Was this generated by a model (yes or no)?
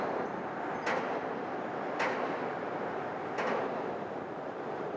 no